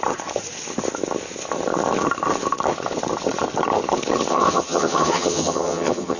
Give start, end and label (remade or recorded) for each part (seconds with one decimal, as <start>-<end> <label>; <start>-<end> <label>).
0.0-4.3 recorded; 4.3-6.2 remade